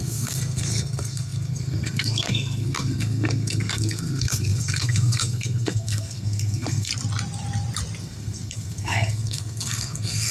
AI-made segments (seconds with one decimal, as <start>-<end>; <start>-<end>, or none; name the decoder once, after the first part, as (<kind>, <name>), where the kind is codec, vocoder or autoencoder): 0.0-6.9 (codec, SNAC); 8.0-10.3